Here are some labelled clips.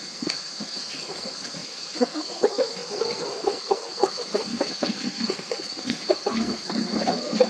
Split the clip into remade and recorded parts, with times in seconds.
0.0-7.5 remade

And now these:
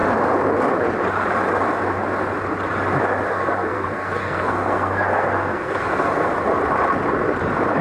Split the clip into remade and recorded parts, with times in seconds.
0.0-3.3 recorded; 3.3-6.3 remade; 6.3-7.8 recorded

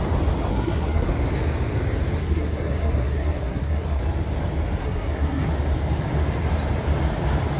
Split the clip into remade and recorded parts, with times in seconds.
0.0-0.5 recorded; 0.5-1.1 remade; 1.1-2.2 recorded; 2.2-4.0 remade; 4.0-4.8 recorded; 4.8-5.5 remade; 5.5-7.6 recorded

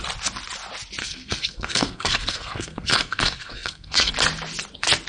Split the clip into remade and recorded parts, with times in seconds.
0.0-1.0 recorded; 1.0-4.1 remade; 4.1-5.1 recorded

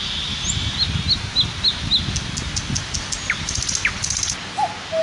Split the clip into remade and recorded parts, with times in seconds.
0.0-5.0 recorded

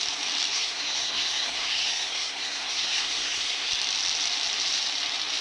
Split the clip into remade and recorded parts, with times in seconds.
0.0-0.5 recorded; 0.5-3.7 remade; 3.7-5.4 recorded

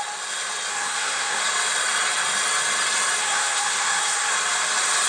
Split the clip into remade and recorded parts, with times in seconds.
0.0-0.7 recorded; 0.7-1.4 remade; 1.4-3.2 recorded; 3.2-4.3 remade; 4.3-5.1 recorded

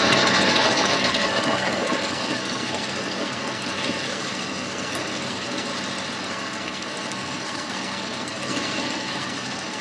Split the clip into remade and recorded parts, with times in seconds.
0.0-5.7 remade; 5.7-6.2 recorded; 6.2-9.8 remade